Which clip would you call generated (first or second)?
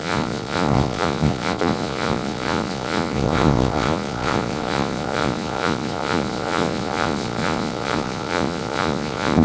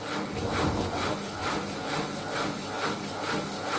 first